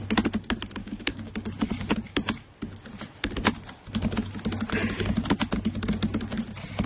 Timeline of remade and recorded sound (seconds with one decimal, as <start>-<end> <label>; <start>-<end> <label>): 0.0-0.8 recorded; 0.8-1.3 remade; 1.3-6.9 recorded